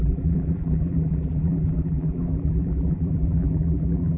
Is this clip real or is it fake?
fake